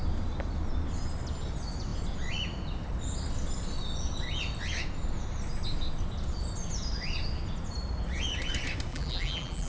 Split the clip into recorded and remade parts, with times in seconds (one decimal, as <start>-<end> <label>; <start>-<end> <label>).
0.0-8.9 recorded; 8.9-9.7 remade